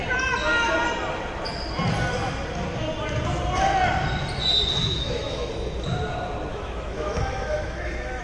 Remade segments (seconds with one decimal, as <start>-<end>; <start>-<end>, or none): 4.8-5.5; 6.5-8.2

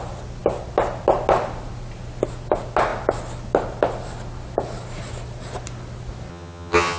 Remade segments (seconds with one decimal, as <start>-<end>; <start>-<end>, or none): 6.3-7.0